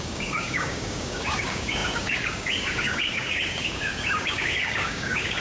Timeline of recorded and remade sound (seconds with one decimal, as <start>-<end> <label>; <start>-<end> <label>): 0.0-5.4 remade

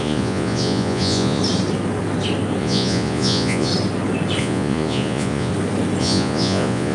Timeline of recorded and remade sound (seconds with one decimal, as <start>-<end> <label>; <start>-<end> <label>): 0.0-1.4 remade; 1.4-2.6 recorded; 2.6-3.7 remade; 3.7-4.4 recorded; 4.4-5.5 remade; 5.5-6.0 recorded; 6.0-6.9 remade

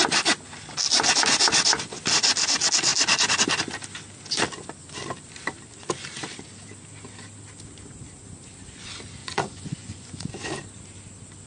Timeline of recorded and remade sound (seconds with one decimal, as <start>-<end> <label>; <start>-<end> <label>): 0.0-9.2 recorded; 9.2-10.3 remade; 10.3-11.5 recorded

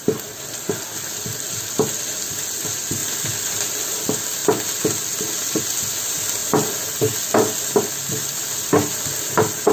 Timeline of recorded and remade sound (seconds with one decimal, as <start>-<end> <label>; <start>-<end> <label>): 0.0-9.7 recorded